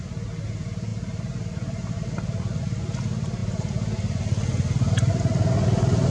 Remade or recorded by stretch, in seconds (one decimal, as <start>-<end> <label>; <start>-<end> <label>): 0.0-6.1 recorded